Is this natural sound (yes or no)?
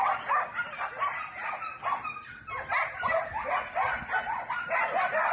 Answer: yes